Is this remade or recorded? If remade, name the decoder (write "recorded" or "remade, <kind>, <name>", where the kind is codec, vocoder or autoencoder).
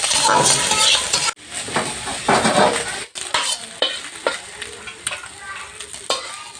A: recorded